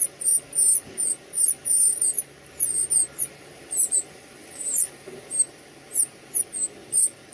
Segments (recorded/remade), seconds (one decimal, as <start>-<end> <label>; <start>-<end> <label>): 0.0-1.9 recorded; 1.9-2.5 remade; 2.5-3.0 recorded; 3.0-5.4 remade; 5.4-7.3 recorded